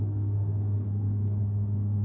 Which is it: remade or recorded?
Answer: remade